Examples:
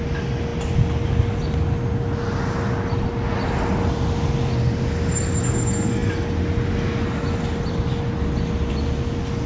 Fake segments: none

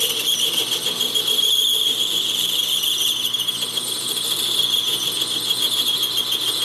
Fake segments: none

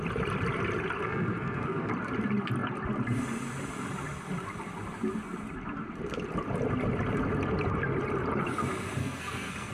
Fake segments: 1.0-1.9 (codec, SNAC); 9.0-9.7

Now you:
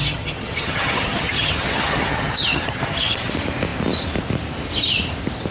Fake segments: 0.0-3.3 (vocoder, HiFi-GAN)

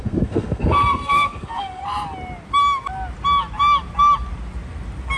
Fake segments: 0.0-1.8 (codec, SNAC)